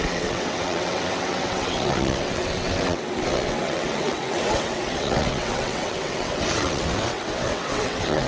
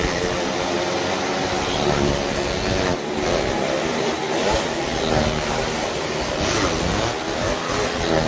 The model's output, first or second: first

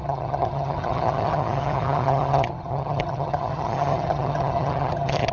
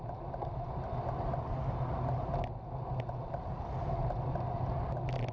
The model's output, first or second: first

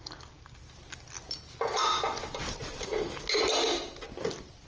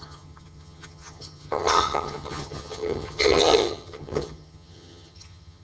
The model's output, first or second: second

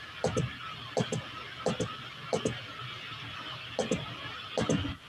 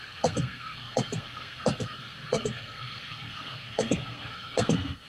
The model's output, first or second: second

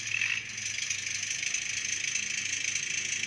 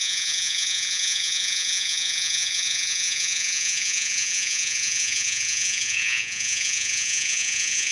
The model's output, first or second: second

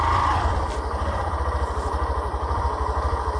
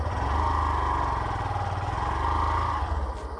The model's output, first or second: first